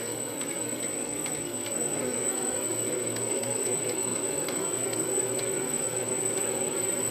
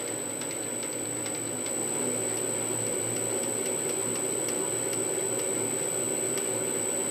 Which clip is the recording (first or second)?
second